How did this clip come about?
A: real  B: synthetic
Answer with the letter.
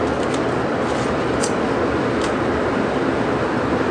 A